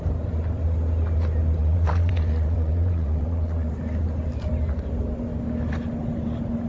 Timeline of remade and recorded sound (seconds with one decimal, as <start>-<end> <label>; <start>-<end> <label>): 0.0-1.6 recorded; 1.6-3.7 remade; 3.7-6.7 recorded